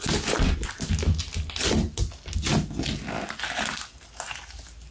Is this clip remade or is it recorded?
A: recorded